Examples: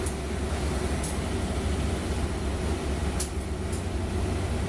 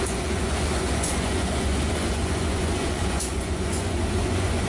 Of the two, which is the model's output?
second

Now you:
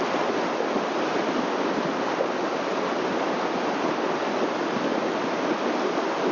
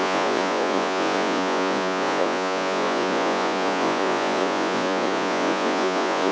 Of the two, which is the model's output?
second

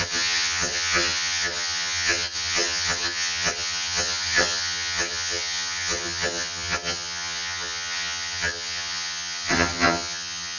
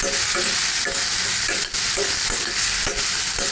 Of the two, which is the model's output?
first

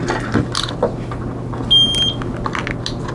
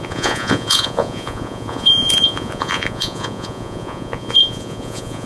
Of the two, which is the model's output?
second